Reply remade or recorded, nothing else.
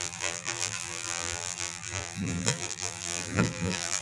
remade